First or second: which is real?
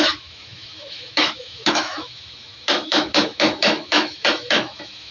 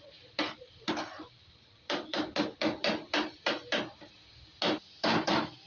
second